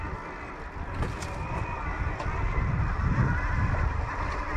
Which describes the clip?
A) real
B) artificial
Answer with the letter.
A